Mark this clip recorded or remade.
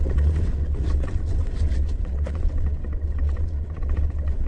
remade